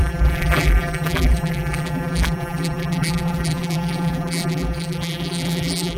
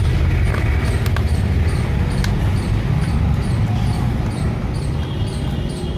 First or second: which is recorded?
second